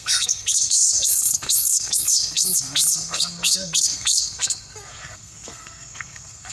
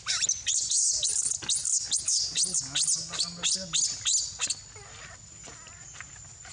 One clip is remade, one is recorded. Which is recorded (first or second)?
second